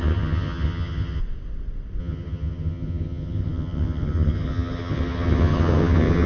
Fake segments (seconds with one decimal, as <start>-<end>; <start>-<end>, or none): 0.0-1.2; 2.0-6.3